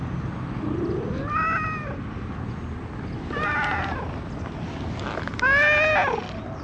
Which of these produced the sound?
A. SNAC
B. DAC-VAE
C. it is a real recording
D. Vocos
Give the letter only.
C